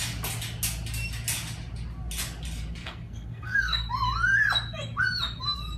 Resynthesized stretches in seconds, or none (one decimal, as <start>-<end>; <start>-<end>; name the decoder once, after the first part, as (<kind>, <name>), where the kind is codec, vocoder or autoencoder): 2.8-3.9 (codec, SNAC)